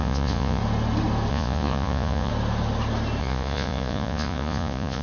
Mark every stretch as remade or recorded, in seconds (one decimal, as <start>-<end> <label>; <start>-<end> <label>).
0.0-0.6 remade; 0.6-1.3 recorded; 1.3-2.3 remade; 2.3-3.2 recorded; 3.2-5.0 remade